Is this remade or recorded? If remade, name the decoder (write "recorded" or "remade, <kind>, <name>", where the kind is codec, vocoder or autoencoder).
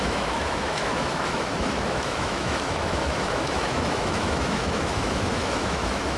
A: remade, autoencoder, DAC-VAE